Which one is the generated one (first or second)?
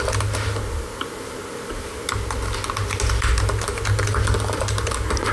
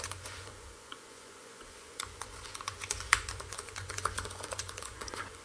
second